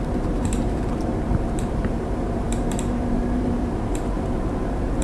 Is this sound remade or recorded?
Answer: remade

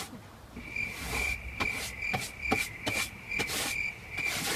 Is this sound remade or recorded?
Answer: recorded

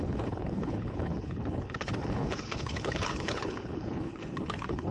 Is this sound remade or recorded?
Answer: remade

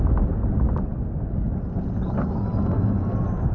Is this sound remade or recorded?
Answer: recorded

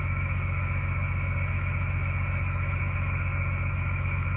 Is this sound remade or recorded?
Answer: remade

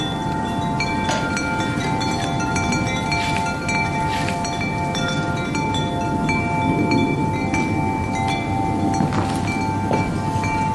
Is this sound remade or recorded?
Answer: recorded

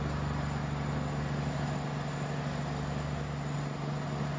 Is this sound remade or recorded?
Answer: recorded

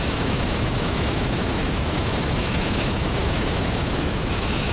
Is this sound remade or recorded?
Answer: remade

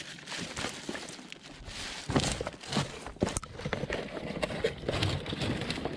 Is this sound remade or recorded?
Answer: recorded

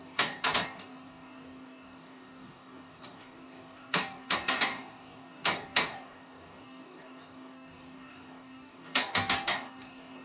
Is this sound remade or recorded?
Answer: remade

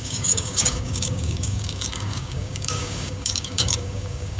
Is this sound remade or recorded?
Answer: remade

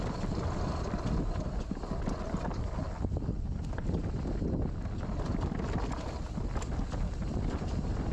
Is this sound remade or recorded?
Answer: recorded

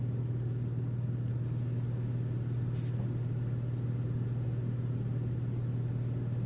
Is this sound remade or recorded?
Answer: recorded